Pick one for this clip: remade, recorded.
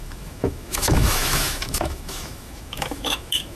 remade